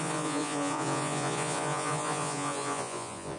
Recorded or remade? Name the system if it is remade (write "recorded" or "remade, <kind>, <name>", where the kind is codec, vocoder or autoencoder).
remade, vocoder, Vocos